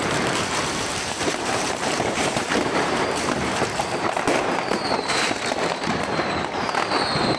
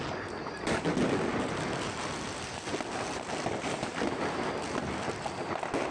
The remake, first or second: first